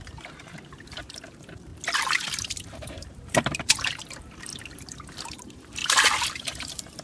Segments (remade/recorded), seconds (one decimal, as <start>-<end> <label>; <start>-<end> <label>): 0.0-1.7 remade; 1.7-2.4 recorded; 2.4-4.5 remade; 4.5-5.1 recorded; 5.1-7.0 remade